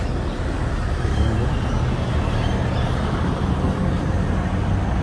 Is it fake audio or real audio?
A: real